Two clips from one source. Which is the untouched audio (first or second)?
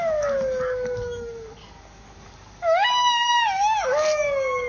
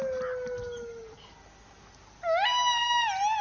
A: second